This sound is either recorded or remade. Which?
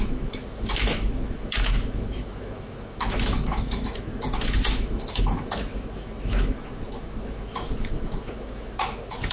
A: remade